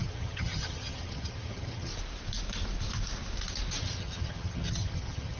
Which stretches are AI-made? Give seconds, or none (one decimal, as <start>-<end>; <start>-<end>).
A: 0.0-1.9; 3.8-5.4